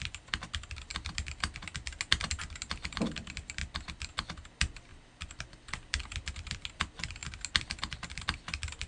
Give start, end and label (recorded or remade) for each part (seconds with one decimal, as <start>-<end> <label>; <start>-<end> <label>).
0.0-8.9 recorded